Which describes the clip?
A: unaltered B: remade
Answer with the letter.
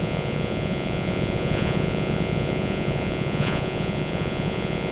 B